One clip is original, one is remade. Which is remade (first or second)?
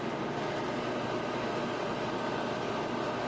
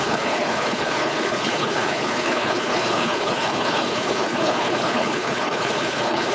second